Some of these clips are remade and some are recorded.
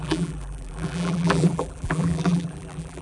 remade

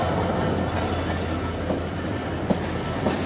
recorded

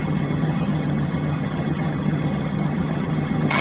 remade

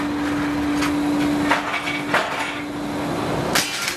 recorded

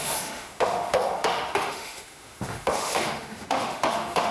remade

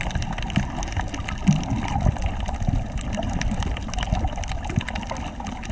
recorded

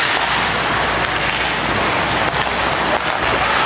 recorded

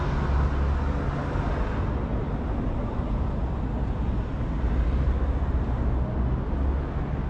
recorded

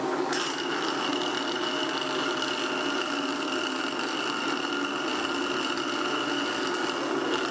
recorded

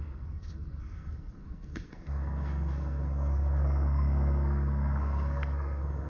remade